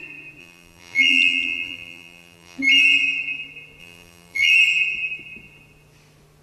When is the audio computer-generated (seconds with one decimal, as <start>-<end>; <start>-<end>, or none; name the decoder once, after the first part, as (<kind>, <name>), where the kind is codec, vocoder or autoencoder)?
0.4-2.6 (vocoder, BigVGAN v2); 3.8-4.5